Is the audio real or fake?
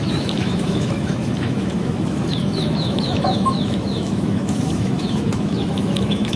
fake